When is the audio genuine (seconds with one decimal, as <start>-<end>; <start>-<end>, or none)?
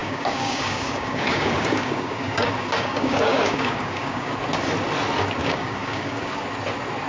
4.3-5.4; 6.4-7.1